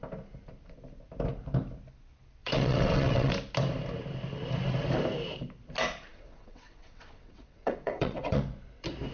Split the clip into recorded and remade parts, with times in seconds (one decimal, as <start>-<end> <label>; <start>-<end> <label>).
0.0-2.4 recorded; 2.4-3.3 remade; 3.3-6.1 recorded; 6.1-8.4 remade; 8.4-9.1 recorded